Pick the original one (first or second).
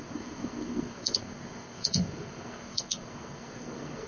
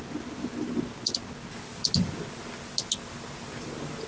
second